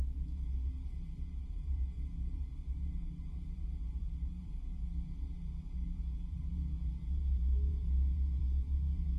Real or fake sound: fake